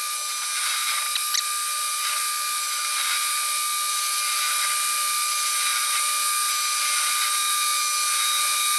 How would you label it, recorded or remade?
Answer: recorded